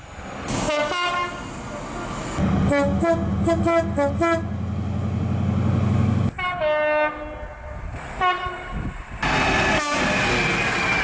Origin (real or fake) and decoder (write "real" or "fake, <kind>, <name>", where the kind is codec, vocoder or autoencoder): real